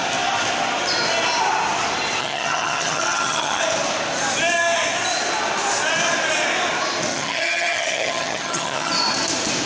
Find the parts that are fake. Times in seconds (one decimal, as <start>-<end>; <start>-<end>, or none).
2.2-3.6; 7.1-8.9